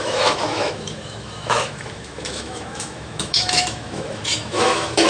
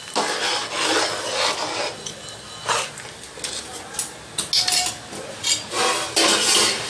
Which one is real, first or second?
second